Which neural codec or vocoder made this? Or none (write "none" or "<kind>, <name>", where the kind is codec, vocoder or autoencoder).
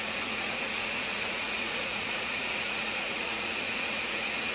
vocoder, Vocos